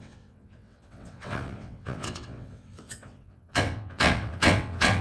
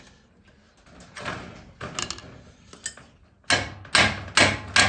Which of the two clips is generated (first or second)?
first